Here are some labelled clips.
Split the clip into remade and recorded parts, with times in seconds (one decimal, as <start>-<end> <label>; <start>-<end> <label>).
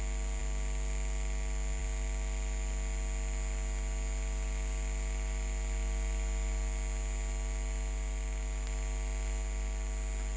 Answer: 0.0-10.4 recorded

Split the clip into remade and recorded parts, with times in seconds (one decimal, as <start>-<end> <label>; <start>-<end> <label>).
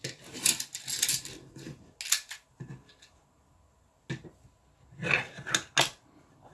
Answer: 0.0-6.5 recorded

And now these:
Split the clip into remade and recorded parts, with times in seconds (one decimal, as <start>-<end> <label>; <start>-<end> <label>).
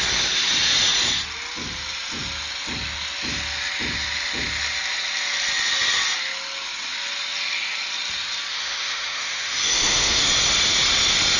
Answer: 0.0-8.5 recorded; 8.5-10.3 remade; 10.3-11.4 recorded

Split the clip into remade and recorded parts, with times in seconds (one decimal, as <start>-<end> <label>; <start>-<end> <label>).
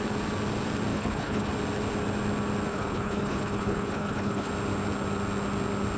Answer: 0.0-0.9 recorded; 0.9-1.5 remade; 1.5-2.7 recorded; 2.7-4.5 remade; 4.5-6.0 recorded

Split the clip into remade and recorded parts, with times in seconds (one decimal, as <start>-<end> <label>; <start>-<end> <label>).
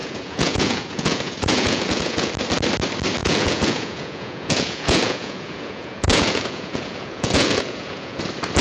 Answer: 0.0-2.3 remade; 2.3-3.2 recorded; 3.2-8.2 remade; 8.2-8.6 recorded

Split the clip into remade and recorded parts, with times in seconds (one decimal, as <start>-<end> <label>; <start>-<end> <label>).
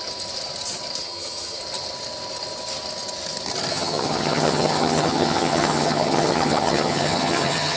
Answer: 0.0-1.0 recorded; 1.0-1.6 remade; 1.6-3.7 recorded; 3.7-7.8 remade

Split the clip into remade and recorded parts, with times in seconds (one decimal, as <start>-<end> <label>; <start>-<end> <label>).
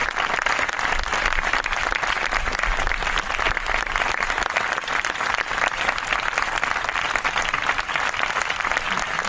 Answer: 0.0-9.3 recorded